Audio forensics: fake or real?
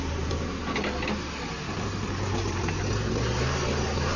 real